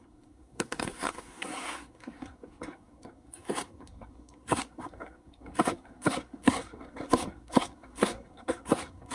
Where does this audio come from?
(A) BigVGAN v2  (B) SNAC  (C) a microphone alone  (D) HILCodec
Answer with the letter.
B